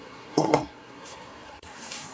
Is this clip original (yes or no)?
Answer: no